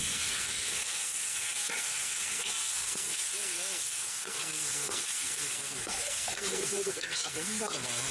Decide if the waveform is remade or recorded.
remade